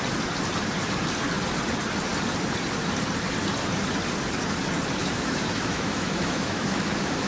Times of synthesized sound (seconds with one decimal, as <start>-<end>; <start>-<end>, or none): 5.0-7.3